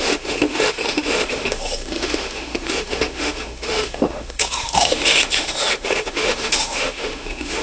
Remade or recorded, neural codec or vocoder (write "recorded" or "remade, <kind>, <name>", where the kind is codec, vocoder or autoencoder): remade, autoencoder, DAC-VAE